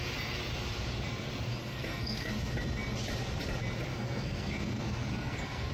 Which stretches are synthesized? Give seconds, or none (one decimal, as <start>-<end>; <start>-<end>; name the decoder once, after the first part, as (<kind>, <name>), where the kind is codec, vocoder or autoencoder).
1.6-2.3 (codec, SNAC); 3.9-5.7